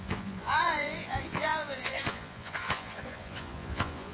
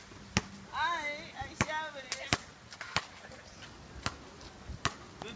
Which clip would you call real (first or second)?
second